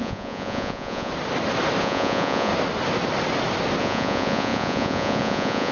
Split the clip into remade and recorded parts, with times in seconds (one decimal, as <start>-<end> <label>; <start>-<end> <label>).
0.0-1.1 remade; 1.1-1.8 recorded; 1.8-2.5 remade; 2.5-3.8 recorded; 3.8-5.7 remade